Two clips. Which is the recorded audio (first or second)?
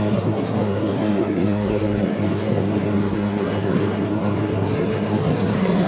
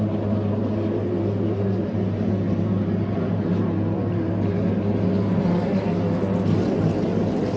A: second